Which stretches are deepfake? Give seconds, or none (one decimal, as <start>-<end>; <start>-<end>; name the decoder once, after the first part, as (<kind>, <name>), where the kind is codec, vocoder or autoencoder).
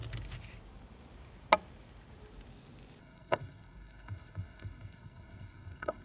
3.0-6.0 (codec, SNAC)